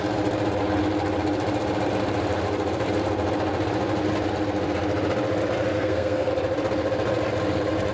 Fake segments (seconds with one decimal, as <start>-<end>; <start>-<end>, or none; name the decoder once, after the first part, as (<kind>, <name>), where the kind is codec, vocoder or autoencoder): 5.7-6.3 (codec, SNAC)